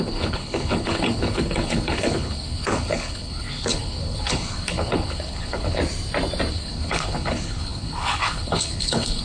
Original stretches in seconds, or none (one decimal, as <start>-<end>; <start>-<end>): 5.8-6.5